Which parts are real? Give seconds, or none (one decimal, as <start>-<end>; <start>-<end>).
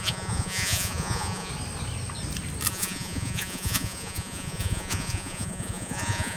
1.5-2.7